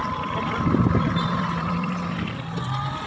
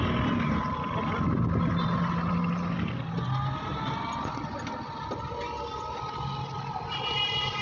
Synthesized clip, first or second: first